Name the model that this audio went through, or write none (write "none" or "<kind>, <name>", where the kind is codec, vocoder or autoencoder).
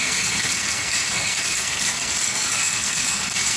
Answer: codec, SNAC